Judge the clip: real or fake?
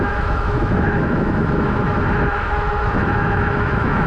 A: fake